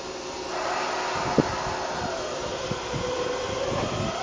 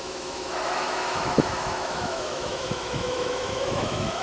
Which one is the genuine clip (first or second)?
first